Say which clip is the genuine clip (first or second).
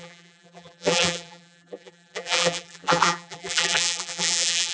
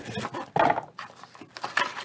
second